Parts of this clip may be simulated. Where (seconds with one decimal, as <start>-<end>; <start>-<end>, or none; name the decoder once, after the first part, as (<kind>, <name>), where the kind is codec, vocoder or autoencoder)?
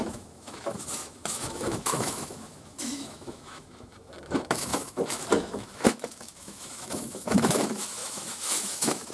0.0-9.1 (autoencoder, DAC-VAE)